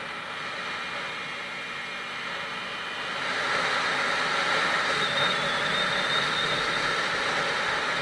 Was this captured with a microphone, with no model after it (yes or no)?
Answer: yes